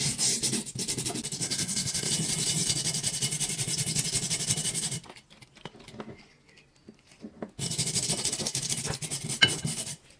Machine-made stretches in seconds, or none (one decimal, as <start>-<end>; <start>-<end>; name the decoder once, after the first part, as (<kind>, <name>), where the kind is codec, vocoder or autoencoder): 1.4-2.1 (codec, SNAC)